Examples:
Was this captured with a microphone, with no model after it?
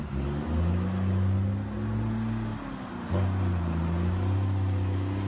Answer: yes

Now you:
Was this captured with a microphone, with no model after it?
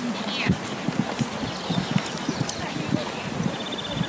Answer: yes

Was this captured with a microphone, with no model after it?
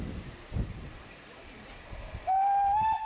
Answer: yes